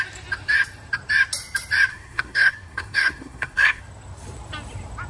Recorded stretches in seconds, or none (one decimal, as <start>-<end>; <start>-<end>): 0.0-1.9; 3.8-5.1